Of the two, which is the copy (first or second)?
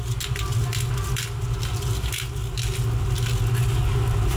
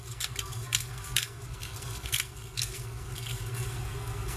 second